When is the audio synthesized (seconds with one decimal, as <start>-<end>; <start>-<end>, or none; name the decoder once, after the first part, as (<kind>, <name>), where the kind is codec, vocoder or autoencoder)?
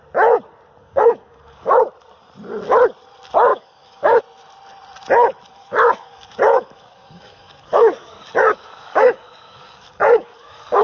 0.8-1.8 (codec, DAC); 3.5-4.2; 5.5-10.8